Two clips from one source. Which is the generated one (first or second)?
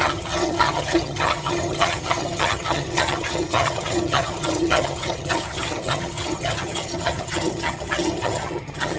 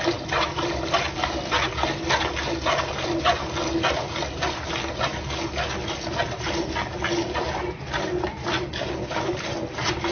first